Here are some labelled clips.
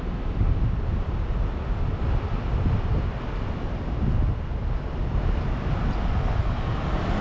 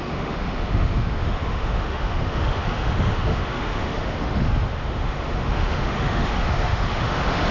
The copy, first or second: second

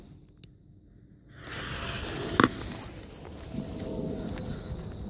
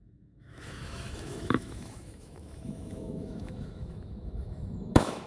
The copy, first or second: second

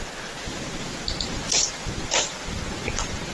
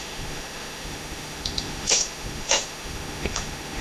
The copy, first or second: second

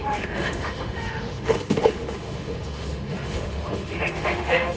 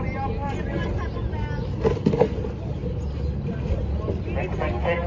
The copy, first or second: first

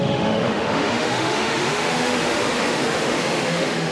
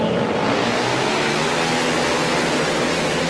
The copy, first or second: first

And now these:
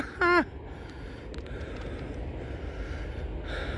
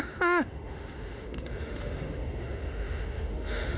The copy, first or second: second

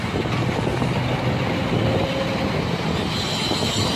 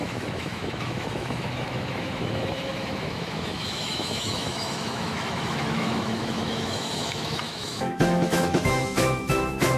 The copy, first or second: second